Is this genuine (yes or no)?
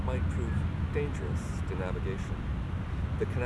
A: yes